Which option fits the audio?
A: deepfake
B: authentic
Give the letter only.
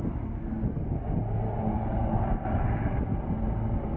B